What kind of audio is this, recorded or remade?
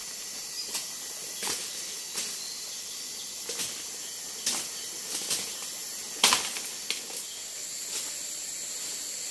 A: recorded